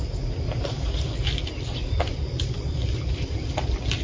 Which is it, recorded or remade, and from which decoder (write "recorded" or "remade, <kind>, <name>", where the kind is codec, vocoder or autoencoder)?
recorded